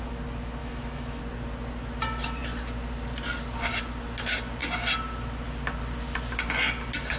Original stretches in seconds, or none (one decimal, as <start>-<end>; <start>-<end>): 0.0-0.6; 1.2-7.2